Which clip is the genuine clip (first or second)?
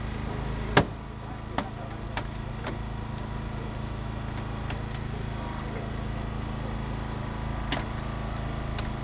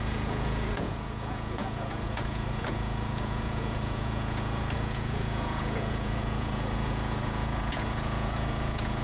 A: first